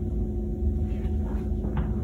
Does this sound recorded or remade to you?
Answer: recorded